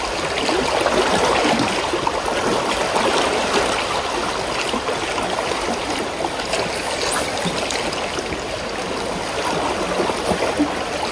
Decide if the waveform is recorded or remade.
recorded